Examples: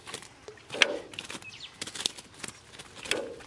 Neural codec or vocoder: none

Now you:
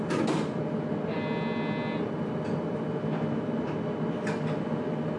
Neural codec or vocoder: none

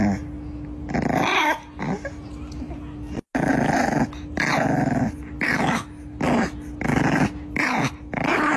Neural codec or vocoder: none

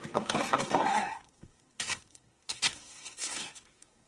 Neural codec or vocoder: codec, SNAC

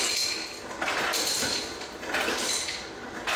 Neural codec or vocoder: none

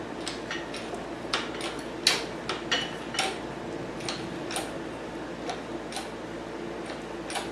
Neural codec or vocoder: none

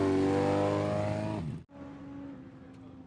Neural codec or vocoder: none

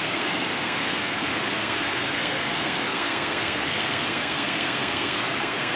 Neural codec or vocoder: codec, SNAC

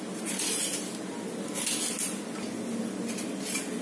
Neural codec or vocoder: none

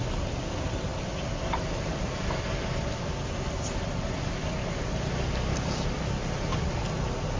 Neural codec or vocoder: none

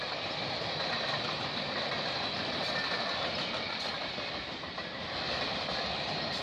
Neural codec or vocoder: none